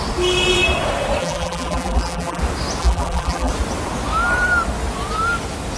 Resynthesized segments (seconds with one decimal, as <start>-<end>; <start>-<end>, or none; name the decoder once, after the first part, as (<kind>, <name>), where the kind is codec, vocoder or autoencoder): 1.2-2.4 (vocoder, BigVGAN v2); 2.8-3.5